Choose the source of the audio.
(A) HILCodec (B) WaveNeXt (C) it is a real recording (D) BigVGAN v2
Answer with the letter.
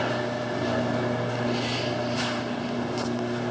C